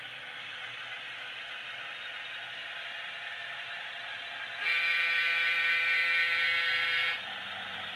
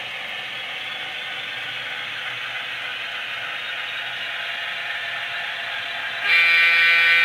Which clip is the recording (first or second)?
second